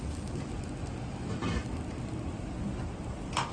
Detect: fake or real real